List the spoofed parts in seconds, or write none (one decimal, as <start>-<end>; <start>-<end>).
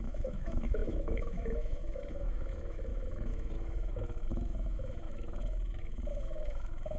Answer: 0.0-7.0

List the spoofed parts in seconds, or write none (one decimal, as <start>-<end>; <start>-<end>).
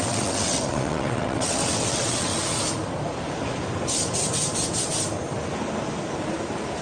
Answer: 0.0-2.3